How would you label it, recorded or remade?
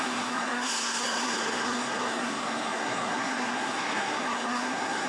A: remade